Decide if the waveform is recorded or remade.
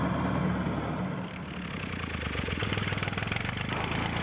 recorded